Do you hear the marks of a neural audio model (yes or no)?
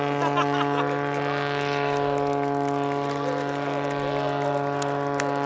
no